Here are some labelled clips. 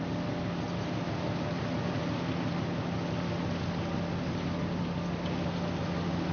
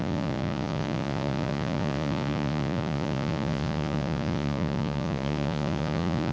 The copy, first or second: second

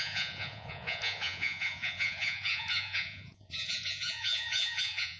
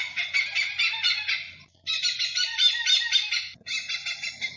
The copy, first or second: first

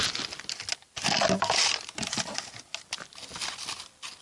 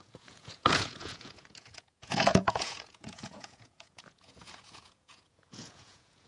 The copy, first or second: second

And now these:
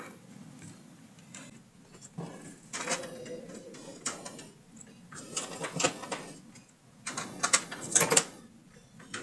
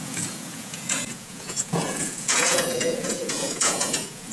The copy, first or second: second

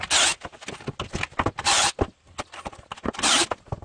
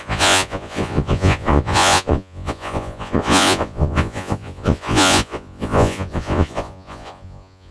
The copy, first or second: second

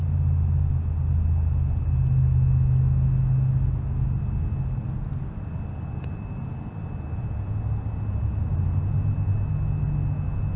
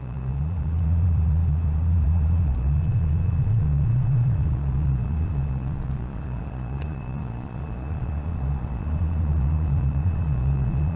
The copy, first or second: second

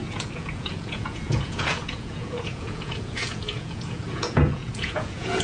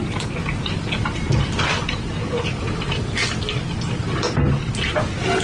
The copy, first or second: first